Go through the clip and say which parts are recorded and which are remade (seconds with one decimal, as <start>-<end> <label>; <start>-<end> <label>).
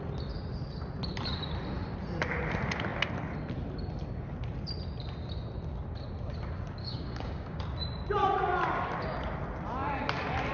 0.0-6.8 recorded; 6.8-7.6 remade; 7.6-10.5 recorded